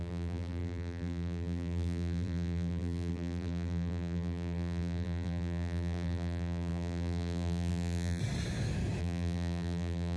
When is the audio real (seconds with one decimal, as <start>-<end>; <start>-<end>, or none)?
8.2-9.0